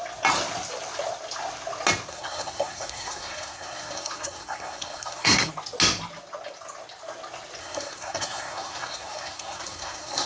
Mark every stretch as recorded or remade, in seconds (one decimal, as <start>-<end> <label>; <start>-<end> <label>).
0.0-2.1 recorded; 2.1-5.5 remade; 5.5-7.6 recorded; 7.6-10.3 remade